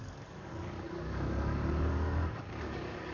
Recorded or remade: remade